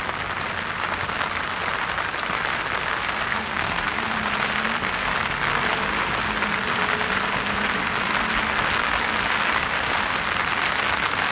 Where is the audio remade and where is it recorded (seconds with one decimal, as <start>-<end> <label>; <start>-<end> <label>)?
0.0-3.3 recorded; 3.3-4.0 remade; 4.0-11.3 recorded